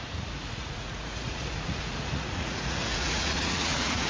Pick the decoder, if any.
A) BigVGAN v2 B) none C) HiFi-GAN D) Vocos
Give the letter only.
D